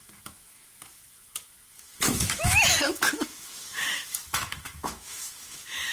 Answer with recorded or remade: remade